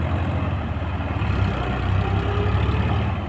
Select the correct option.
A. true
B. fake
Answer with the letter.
A